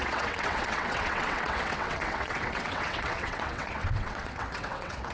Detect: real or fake fake